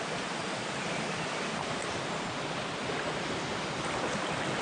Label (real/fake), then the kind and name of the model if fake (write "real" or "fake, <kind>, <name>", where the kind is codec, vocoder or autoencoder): real